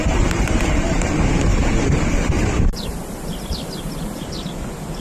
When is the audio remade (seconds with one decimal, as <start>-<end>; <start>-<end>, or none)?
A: 0.0-0.9; 1.5-4.5